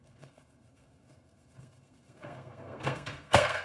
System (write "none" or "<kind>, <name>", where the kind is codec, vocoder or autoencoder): codec, SNAC